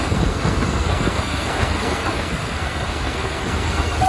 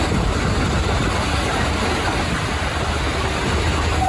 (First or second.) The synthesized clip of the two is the first